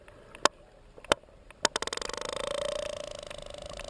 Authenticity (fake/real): real